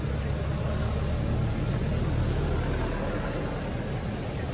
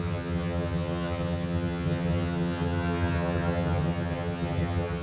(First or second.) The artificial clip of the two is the second